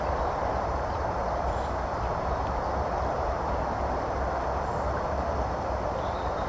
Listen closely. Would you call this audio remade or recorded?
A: remade